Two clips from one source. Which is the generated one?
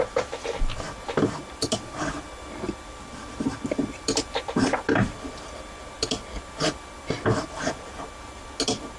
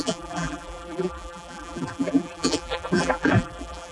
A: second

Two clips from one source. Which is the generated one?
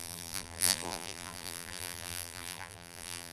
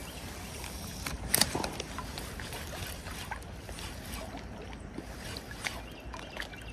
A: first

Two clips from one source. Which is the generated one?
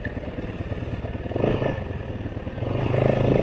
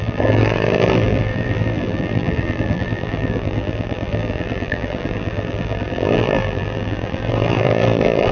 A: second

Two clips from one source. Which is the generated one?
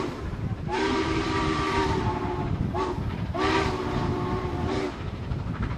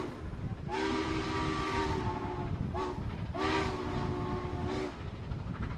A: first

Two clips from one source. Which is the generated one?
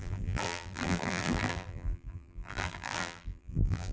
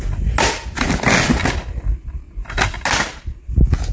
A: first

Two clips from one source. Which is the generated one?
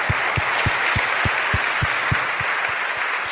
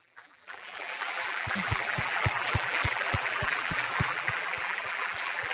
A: second